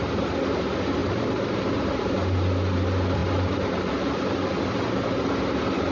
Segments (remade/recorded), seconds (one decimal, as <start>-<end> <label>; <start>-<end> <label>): 0.0-5.9 recorded